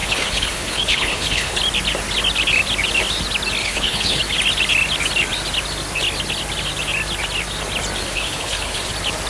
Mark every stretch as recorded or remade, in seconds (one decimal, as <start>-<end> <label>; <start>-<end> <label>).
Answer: 0.0-1.6 remade; 1.6-3.6 recorded; 3.6-4.2 remade; 4.2-8.0 recorded; 8.0-8.9 remade; 8.9-9.3 recorded